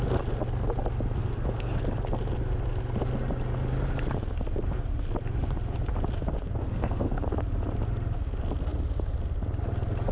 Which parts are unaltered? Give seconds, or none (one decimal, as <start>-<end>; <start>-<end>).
0.0-1.2; 1.8-6.6; 7.2-10.1